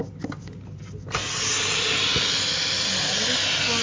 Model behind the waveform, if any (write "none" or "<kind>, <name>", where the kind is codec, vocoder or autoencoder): none